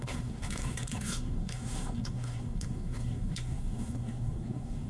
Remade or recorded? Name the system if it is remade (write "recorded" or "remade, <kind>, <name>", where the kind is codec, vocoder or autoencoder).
remade, codec, SNAC